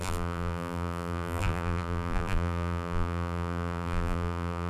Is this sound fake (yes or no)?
yes